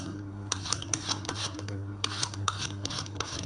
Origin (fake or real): fake